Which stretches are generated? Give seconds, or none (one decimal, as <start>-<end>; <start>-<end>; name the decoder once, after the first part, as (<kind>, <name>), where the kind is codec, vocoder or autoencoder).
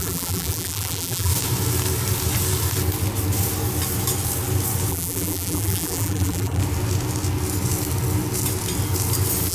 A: 0.0-1.3 (vocoder, BigVGAN v2); 4.9-6.6